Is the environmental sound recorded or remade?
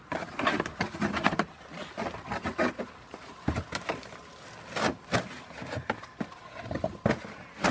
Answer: recorded